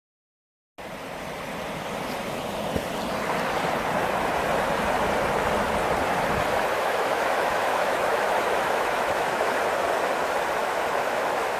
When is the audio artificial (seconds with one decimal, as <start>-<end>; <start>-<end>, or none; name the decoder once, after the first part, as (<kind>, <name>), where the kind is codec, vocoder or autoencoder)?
6.7-9.5 (autoencoder, DAC-VAE); 10.6-11.6